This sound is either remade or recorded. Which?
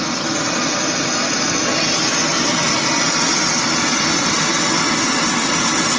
recorded